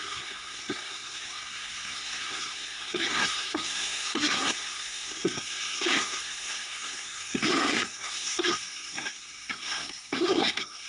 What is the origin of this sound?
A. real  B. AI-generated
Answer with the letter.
B